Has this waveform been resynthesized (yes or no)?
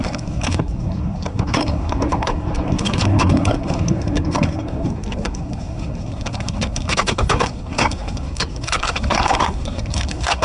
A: yes